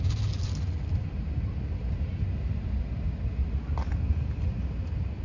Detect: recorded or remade recorded